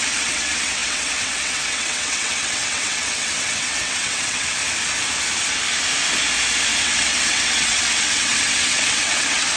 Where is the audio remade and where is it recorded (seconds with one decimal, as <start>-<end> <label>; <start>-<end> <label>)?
0.0-4.6 remade; 4.6-6.8 recorded; 6.8-9.6 remade